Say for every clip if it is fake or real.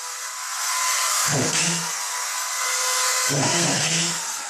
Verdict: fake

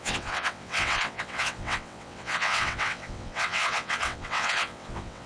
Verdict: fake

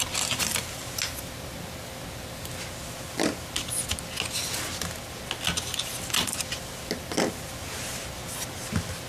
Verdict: real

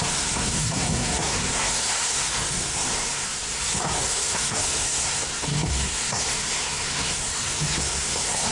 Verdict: fake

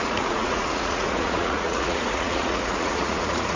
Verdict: fake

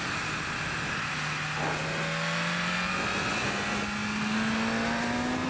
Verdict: real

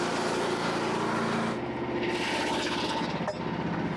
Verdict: real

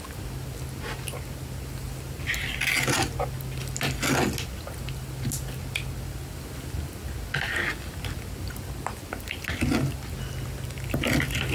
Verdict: real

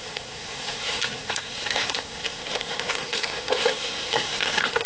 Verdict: fake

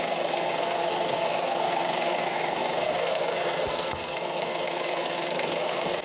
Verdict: fake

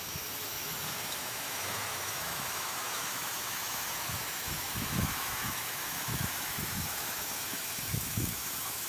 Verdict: fake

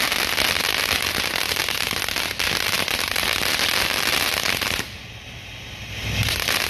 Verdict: real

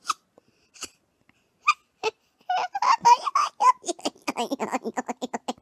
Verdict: real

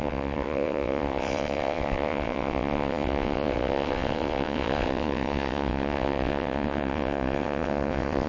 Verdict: fake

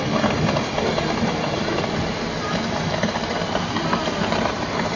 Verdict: fake